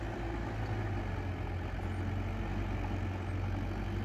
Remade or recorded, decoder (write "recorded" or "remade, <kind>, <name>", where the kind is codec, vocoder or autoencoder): recorded